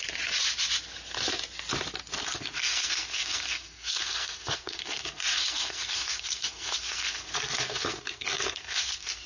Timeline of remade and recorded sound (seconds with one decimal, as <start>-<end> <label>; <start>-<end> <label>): 0.0-2.2 recorded; 2.2-9.3 remade